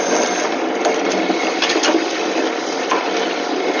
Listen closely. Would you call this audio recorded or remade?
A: recorded